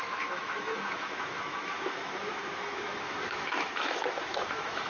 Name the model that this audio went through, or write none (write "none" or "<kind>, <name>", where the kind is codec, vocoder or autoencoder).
autoencoder, DAC-VAE